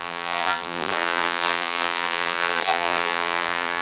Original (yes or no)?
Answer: no